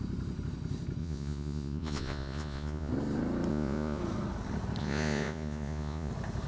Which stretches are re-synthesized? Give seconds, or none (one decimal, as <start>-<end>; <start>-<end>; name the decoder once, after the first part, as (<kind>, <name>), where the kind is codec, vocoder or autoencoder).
1.0-2.9 (vocoder, Vocos); 3.5-4.0; 4.8-6.1